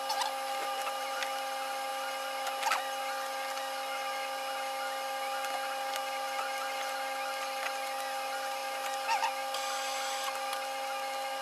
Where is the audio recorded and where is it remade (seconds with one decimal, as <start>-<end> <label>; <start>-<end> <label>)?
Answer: 0.0-0.6 recorded; 0.6-1.2 remade; 1.2-11.4 recorded